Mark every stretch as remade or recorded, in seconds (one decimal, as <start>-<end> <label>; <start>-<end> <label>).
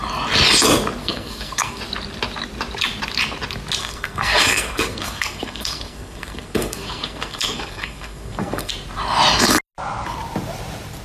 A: 0.0-1.0 recorded; 1.0-1.8 remade; 1.8-3.8 recorded; 3.8-8.7 remade; 8.7-11.0 recorded